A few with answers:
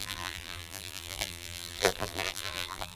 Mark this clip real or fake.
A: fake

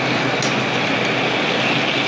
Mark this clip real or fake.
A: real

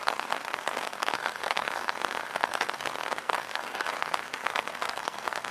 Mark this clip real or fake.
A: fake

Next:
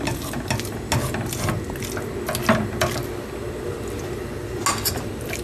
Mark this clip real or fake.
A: real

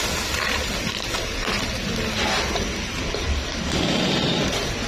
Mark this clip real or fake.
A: real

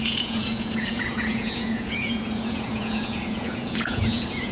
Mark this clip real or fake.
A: fake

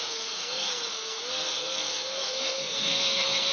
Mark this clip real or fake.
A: fake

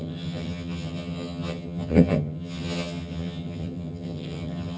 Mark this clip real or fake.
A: fake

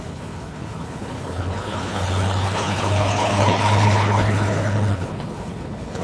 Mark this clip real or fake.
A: fake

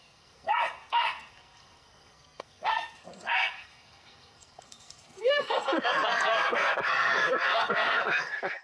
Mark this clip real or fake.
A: fake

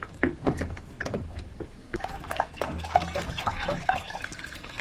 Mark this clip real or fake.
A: fake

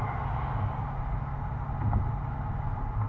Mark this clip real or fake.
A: real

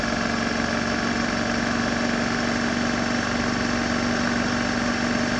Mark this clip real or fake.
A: real